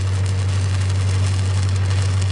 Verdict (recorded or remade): recorded